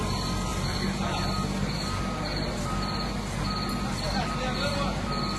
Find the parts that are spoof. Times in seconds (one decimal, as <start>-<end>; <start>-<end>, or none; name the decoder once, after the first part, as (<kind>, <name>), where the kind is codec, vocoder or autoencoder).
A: none